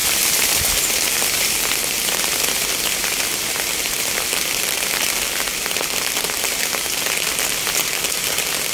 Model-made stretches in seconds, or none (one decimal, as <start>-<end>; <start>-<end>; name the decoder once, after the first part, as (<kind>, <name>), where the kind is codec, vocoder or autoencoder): none